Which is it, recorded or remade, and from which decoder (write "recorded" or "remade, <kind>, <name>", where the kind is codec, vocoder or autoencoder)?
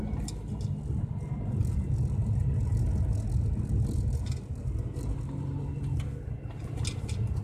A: recorded